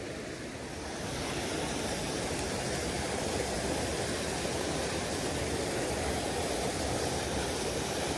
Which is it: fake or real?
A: real